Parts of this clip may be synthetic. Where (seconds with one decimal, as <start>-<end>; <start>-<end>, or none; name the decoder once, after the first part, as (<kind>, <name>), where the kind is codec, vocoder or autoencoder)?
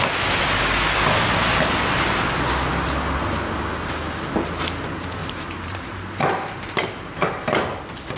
5.2-7.6 (vocoder, BigVGAN v2)